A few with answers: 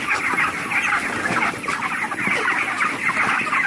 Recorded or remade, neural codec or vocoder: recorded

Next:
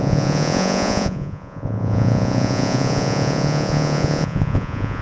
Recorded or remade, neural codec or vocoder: remade, vocoder, Vocos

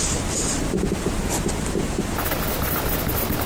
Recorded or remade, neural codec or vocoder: recorded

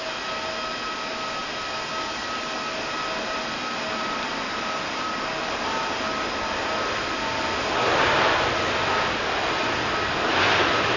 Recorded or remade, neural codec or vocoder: recorded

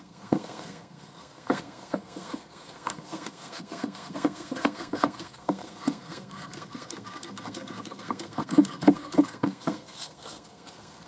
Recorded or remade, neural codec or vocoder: remade, codec, SNAC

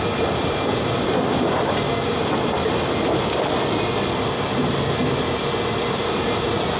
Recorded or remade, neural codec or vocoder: recorded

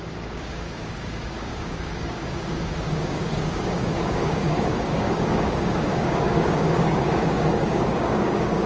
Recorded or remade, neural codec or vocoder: remade, codec, DAC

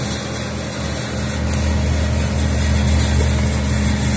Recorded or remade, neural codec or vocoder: recorded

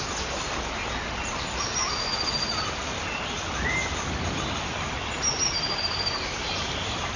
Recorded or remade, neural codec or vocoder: recorded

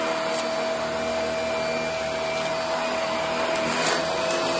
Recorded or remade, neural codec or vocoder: recorded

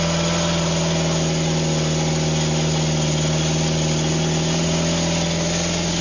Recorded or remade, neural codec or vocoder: recorded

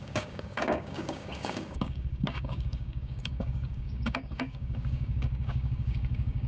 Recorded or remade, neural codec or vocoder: remade, codec, DAC